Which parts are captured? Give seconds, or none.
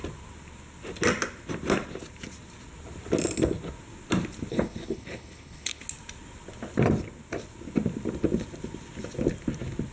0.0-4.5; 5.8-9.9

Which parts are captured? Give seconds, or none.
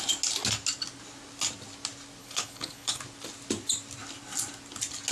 0.0-2.2; 3.0-5.1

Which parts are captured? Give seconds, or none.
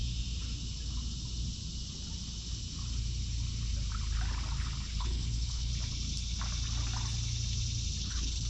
0.0-5.0; 5.7-8.0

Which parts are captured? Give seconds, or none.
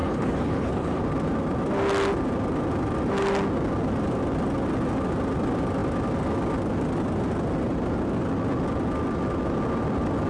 1.0-10.3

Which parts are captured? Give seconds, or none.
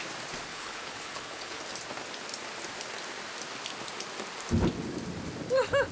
0.0-0.5; 1.6-5.9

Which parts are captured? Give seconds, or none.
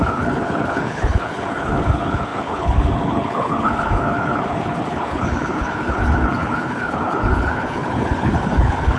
none